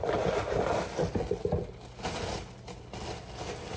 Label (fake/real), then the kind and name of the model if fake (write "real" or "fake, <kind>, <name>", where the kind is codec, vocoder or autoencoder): real